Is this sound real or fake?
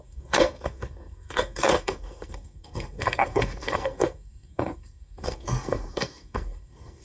fake